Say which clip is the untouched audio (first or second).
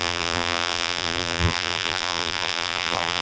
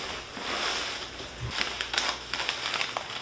second